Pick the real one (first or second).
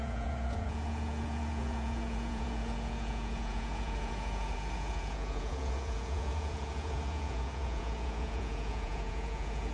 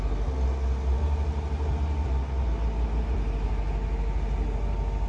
second